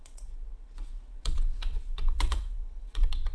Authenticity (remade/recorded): remade